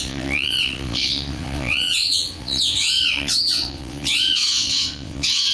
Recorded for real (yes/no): no